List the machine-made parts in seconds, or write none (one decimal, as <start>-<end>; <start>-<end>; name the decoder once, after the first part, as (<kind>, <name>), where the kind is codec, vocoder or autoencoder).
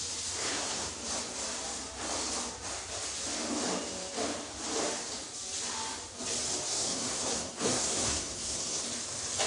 0.4-0.9 (codec, SNAC); 6.7-8.8